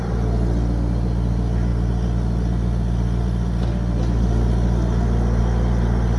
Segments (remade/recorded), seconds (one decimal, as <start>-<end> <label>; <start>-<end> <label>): 0.0-6.2 recorded